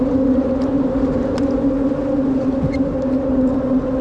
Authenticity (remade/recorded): recorded